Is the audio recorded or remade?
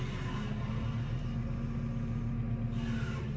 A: recorded